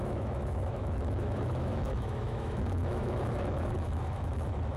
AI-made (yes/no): yes